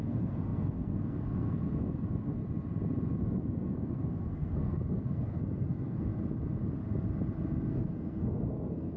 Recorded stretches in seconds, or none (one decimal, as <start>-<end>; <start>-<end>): 2.4-3.2; 6.1-7.7